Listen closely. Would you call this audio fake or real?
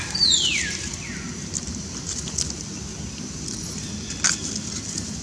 real